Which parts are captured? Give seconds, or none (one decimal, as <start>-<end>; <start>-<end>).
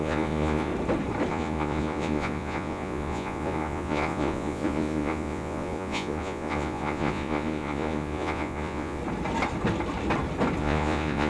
0.7-1.3; 9.0-10.6